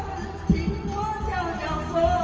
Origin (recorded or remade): recorded